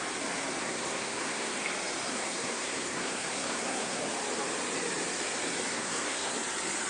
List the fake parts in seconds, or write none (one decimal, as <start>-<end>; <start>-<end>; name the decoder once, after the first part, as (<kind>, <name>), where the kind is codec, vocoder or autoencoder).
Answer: 0.6-1.5 (codec, SNAC); 2.1-4.0; 5.7-6.3